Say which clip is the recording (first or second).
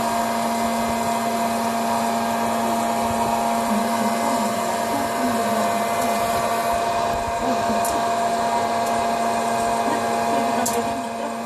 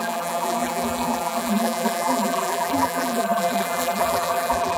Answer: first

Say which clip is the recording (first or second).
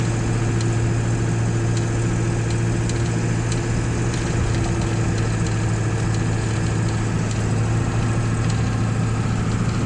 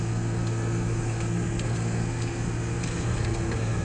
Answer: first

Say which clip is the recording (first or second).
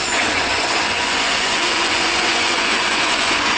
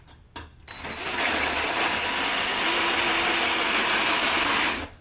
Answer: second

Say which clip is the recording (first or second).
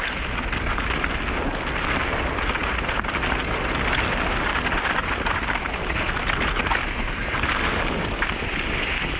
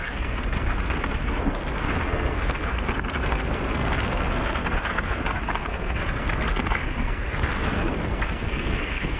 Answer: first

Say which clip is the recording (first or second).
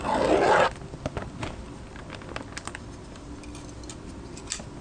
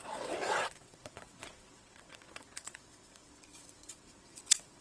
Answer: first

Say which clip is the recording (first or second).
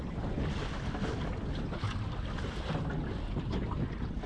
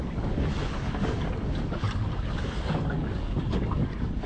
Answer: first